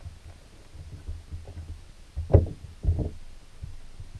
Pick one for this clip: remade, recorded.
recorded